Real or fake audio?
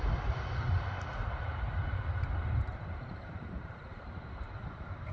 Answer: fake